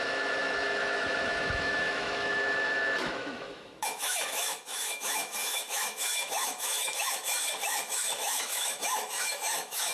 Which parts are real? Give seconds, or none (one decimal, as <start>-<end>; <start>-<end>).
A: none

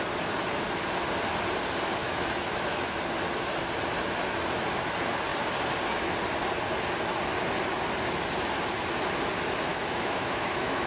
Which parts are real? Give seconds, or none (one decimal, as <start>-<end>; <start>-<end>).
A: 0.0-2.0; 3.0-9.7